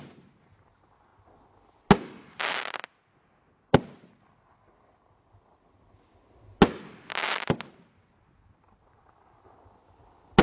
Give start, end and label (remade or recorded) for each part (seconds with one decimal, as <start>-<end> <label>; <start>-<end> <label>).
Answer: 0.0-10.4 recorded